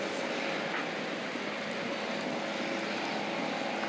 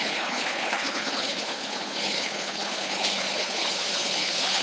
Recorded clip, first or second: first